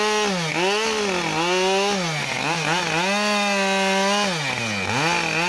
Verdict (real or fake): real